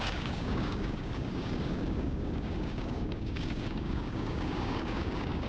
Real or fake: fake